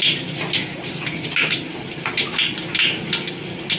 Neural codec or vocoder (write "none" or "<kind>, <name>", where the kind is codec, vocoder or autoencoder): none